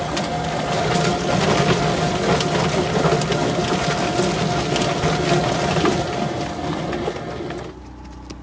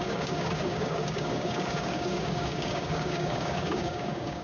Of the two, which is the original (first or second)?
first